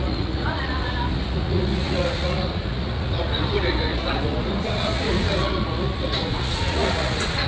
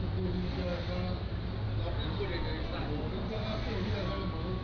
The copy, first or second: first